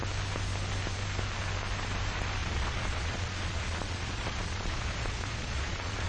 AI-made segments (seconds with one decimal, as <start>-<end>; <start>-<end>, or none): 2.4-6.1